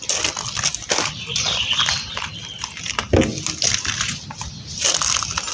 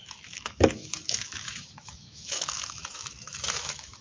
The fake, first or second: second